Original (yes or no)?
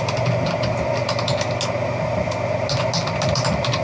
yes